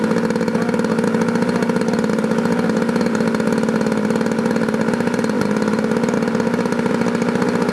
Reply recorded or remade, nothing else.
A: recorded